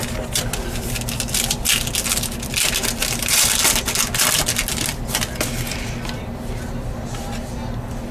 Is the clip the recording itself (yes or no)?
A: yes